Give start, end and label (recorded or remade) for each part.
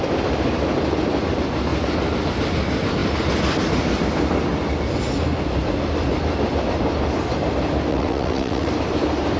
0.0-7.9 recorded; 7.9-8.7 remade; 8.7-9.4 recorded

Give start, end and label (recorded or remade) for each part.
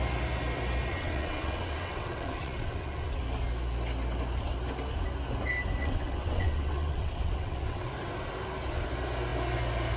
0.0-0.9 recorded; 0.9-3.2 remade; 3.2-5.8 recorded; 5.8-7.9 remade; 7.9-10.0 recorded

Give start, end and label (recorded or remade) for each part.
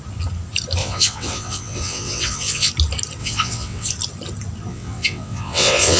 0.0-0.8 recorded; 0.8-2.7 remade; 2.7-3.2 recorded; 3.2-3.9 remade; 3.9-4.7 recorded; 4.7-6.0 remade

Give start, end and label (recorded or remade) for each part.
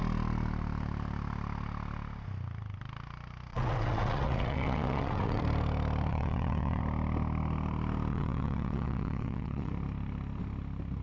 0.0-3.5 recorded; 3.5-5.4 remade; 5.4-6.1 recorded; 6.1-6.8 remade; 6.8-8.1 recorded; 8.1-9.7 remade; 9.7-11.0 recorded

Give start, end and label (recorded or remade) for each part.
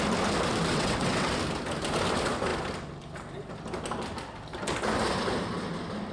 0.0-0.7 recorded; 0.7-1.3 remade; 1.3-6.1 recorded